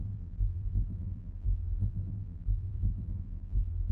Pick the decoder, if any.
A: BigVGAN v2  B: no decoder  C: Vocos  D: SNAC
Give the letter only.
A